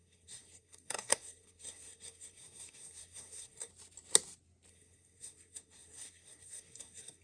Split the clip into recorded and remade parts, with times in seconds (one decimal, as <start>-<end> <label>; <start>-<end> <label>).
0.0-3.7 remade; 3.7-4.7 recorded; 4.7-7.2 remade